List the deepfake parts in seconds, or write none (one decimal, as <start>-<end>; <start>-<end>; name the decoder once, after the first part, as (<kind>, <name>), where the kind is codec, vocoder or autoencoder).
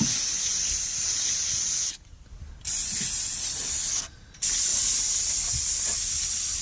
none